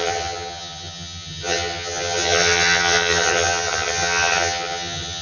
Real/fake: fake